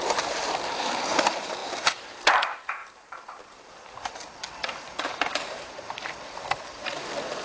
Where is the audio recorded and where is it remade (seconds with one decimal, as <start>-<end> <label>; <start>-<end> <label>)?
0.0-7.4 remade

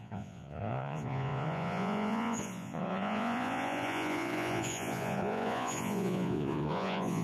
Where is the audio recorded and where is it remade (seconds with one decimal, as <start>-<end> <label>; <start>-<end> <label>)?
0.0-7.2 remade

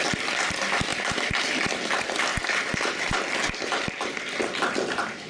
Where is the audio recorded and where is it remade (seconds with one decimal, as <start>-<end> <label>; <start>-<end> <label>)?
0.0-5.3 recorded

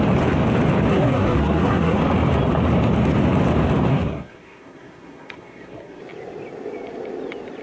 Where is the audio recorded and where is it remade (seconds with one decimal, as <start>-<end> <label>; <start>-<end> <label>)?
0.0-0.9 recorded; 0.9-2.0 remade; 2.0-3.9 recorded; 3.9-6.0 remade; 6.0-7.6 recorded

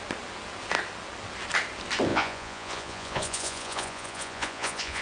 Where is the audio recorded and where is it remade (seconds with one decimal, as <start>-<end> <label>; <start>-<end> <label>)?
0.0-2.1 recorded; 2.1-5.0 remade

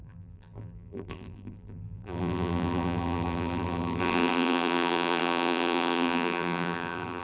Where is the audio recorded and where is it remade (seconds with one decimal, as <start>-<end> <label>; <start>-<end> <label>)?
0.0-7.2 remade

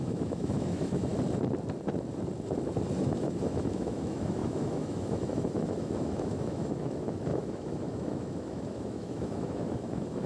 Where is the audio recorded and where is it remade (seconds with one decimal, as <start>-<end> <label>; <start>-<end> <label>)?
0.0-1.1 remade; 1.1-3.0 recorded; 3.0-10.3 remade

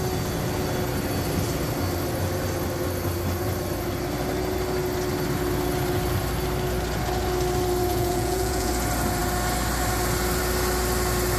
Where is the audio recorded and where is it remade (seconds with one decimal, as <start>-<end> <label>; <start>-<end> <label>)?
0.0-7.9 recorded; 7.9-8.7 remade; 8.7-11.4 recorded